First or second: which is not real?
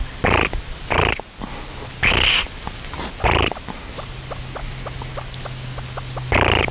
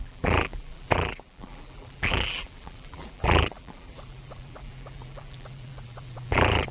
second